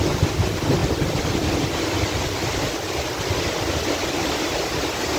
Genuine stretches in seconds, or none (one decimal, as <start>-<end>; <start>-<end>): 0.0-5.2